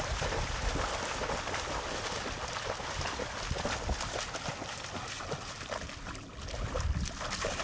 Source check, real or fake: real